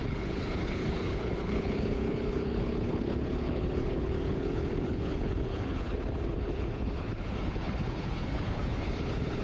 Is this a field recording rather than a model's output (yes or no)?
no